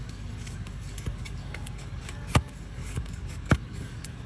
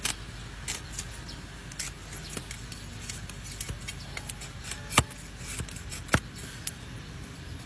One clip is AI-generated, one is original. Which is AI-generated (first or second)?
first